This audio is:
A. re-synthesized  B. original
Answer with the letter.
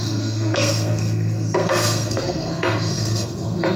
A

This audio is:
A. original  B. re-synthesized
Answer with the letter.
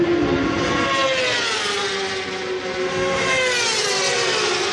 A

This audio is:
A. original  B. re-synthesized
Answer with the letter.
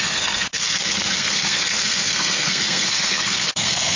B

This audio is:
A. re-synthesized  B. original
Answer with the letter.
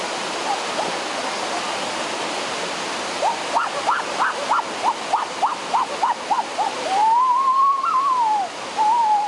B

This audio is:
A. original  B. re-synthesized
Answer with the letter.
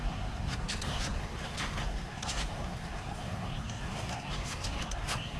B